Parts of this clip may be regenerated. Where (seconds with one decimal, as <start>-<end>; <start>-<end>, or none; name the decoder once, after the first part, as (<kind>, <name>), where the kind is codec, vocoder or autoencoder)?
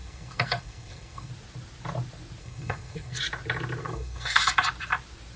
0.0-1.3 (codec, SNAC); 2.4-3.2; 3.8-4.4